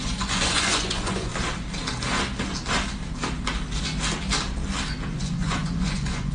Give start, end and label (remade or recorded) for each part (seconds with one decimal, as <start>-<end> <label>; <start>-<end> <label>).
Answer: 0.0-1.3 remade; 1.3-5.1 recorded; 5.1-6.3 remade